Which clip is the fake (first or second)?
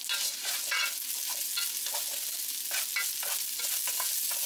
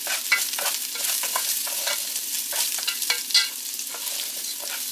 second